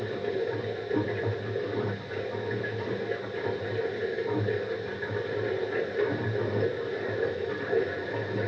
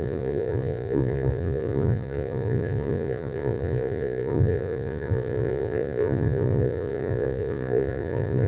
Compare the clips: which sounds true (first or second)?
first